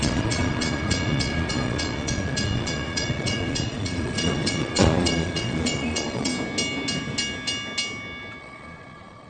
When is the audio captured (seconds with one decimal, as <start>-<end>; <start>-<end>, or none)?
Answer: 6.3-8.4